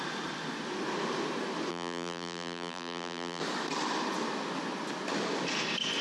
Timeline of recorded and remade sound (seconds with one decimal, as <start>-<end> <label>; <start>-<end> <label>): 0.0-1.7 recorded; 1.7-3.4 remade; 3.4-6.0 recorded